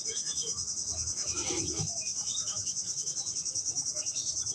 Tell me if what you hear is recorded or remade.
remade